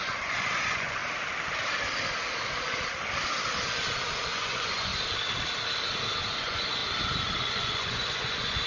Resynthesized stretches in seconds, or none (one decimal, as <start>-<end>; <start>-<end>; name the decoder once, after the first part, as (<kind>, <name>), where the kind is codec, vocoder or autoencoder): 0.0-1.0 (vocoder, Vocos); 4.3-4.9; 6.3-6.8; 7.4-8.7